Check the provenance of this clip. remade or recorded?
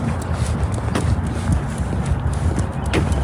recorded